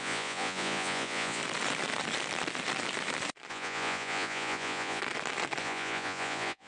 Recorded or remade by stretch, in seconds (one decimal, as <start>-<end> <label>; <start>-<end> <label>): 0.0-1.4 remade; 1.4-3.5 recorded; 3.5-5.0 remade; 5.0-5.6 recorded; 5.6-6.7 remade